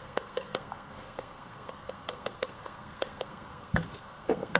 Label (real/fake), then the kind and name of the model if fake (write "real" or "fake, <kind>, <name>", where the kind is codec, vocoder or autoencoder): fake, codec, SNAC